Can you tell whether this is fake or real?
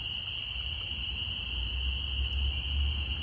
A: real